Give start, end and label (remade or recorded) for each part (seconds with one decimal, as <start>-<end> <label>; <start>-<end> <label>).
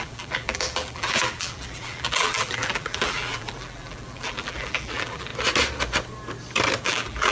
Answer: 0.0-5.3 remade; 5.3-6.8 recorded; 6.8-7.3 remade